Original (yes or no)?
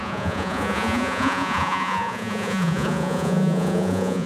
no